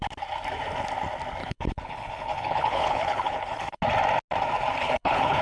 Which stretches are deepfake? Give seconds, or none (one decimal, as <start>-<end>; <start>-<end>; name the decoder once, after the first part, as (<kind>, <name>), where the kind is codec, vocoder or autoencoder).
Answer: 1.4-3.8 (codec, HILCodec); 4.8-5.4